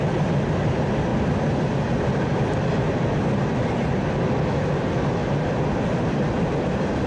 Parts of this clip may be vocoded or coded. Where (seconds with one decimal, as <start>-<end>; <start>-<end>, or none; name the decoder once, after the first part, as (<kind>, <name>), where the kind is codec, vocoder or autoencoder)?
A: none